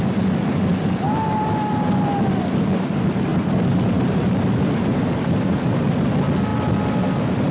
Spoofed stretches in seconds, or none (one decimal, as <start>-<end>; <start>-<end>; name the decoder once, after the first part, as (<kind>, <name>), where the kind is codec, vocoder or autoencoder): 3.3-5.9 (vocoder, BigVGAN v2)